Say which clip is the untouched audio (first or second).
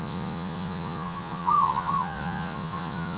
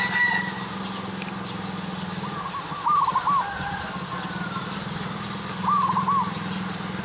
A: second